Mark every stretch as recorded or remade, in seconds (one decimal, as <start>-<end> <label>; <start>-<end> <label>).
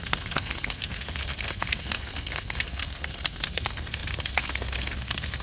0.0-5.4 remade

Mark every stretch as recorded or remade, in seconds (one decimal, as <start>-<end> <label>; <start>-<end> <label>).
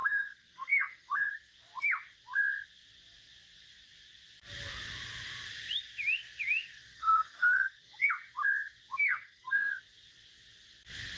0.0-1.3 remade; 1.3-6.9 recorded; 6.9-8.1 remade; 8.1-9.1 recorded; 9.1-9.7 remade; 9.7-11.2 recorded